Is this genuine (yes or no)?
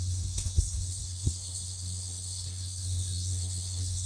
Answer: no